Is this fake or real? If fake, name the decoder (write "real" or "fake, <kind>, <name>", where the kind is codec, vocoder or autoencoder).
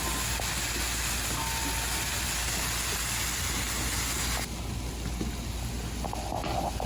real